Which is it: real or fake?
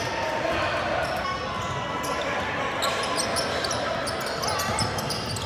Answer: real